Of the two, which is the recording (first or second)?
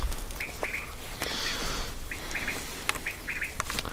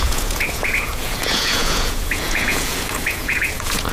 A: first